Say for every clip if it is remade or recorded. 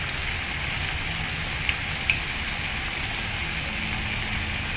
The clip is recorded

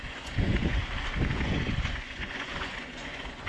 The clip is remade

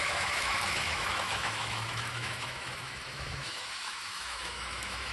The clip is remade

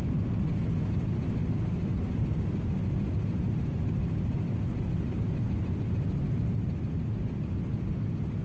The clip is recorded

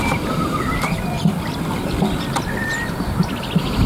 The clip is recorded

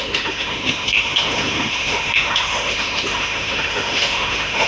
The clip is remade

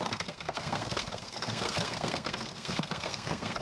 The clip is remade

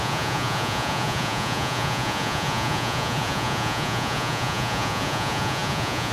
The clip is remade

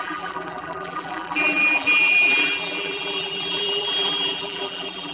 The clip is remade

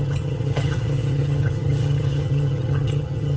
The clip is remade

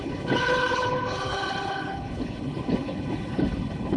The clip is remade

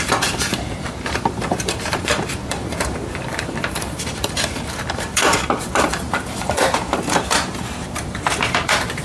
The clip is remade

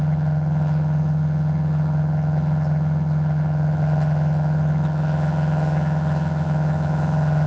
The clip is remade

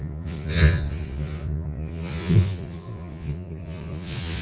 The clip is remade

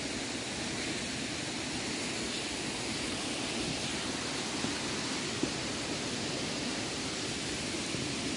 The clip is recorded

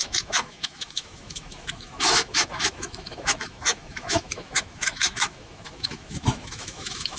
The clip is remade